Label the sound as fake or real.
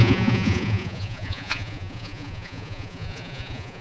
fake